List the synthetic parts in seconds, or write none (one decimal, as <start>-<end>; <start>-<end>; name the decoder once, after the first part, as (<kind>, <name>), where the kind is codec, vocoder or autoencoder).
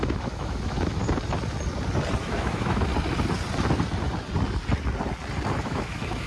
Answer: 0.0-1.0 (autoencoder, DAC-VAE); 2.2-2.9; 5.6-6.3